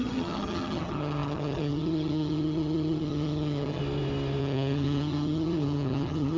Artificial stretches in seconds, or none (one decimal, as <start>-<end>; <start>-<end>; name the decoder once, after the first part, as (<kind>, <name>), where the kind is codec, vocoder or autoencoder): 0.0-3.8 (vocoder, HiFi-GAN); 4.4-6.4